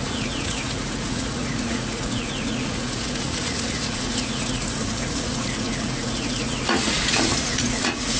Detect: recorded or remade remade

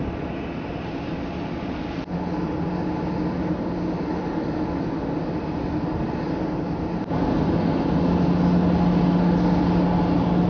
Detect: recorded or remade recorded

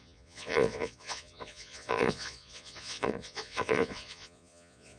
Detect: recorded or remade remade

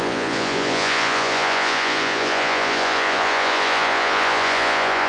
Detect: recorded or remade remade